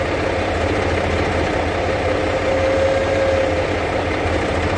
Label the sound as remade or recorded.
recorded